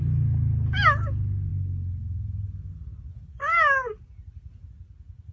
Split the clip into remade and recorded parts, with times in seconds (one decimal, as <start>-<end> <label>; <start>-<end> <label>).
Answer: 0.0-5.3 recorded